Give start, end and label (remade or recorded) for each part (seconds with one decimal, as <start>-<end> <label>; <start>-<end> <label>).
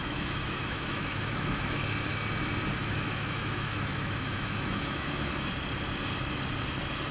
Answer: 0.0-1.8 remade; 1.8-2.8 recorded; 2.8-5.5 remade; 5.5-7.1 recorded